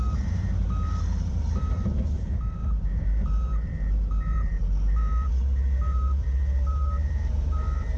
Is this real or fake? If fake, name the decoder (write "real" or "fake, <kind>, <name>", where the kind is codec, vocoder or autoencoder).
fake, vocoder, BigVGAN v2